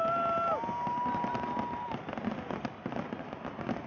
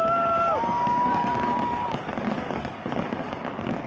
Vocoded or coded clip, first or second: second